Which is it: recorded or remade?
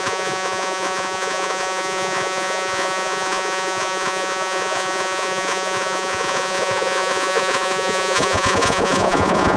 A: remade